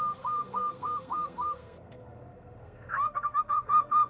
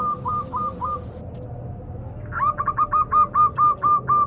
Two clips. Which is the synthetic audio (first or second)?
first